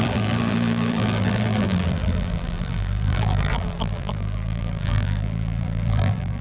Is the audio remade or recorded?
remade